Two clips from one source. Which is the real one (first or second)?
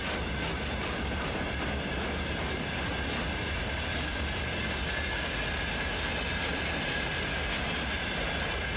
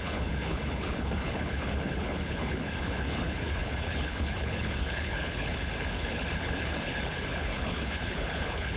first